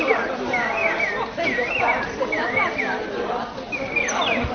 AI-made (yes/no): no